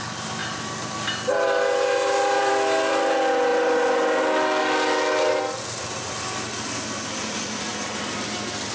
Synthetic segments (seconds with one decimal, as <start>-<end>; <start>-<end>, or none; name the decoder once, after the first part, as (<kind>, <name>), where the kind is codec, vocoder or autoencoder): 0.4-2.5 (vocoder, BigVGAN v2)